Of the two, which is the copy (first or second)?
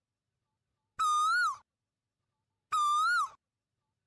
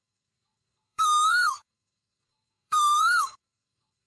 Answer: second